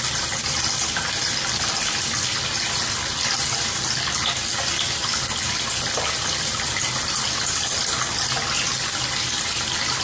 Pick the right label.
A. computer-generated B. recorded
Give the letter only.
B